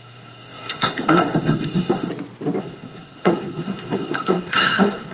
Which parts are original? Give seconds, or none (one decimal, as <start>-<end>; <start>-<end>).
2.1-2.6